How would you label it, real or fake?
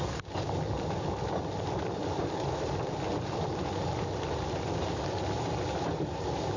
real